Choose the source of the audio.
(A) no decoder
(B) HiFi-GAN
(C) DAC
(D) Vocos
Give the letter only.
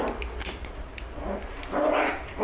A